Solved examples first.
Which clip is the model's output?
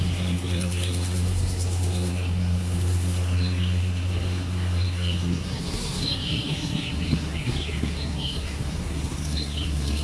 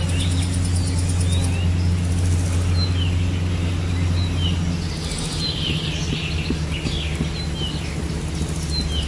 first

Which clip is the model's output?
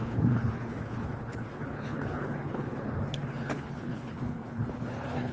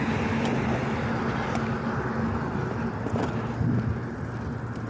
first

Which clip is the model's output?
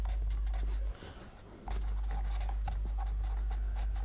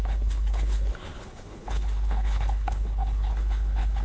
second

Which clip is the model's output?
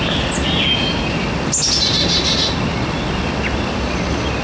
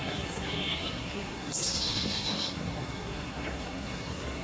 second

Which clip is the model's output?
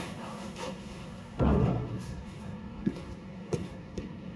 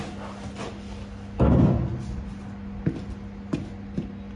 first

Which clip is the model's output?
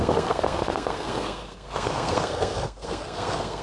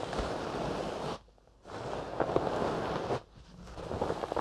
first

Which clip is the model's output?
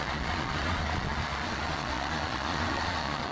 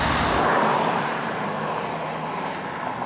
first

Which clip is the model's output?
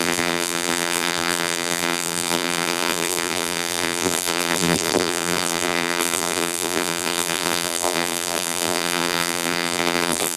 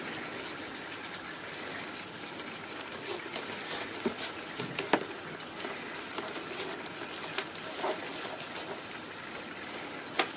first